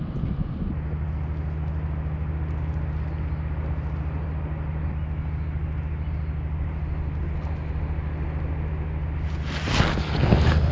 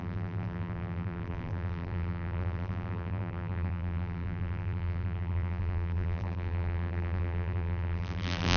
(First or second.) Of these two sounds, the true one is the first